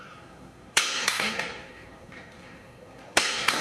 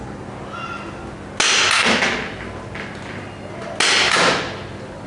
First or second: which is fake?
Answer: first